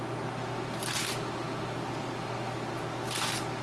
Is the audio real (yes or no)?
yes